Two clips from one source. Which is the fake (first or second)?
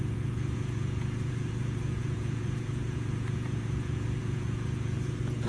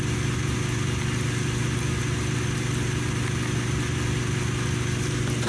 first